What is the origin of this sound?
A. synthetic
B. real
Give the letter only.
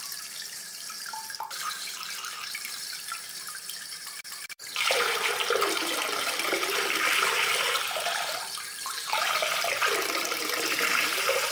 A